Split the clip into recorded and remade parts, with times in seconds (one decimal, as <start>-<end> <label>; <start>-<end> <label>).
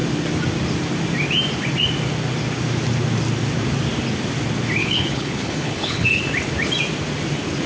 0.0-4.8 recorded; 4.8-6.2 remade; 6.2-7.7 recorded